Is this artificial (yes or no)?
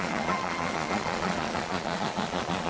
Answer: yes